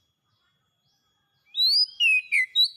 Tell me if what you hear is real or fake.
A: real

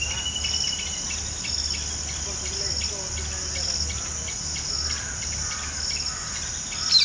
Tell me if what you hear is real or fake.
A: real